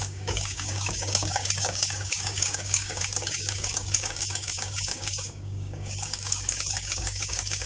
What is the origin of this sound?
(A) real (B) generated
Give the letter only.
B